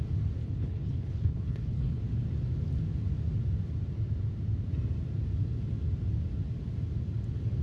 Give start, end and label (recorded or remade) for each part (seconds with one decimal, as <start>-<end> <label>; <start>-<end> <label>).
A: 0.0-0.4 recorded; 0.4-2.0 remade; 2.0-7.6 recorded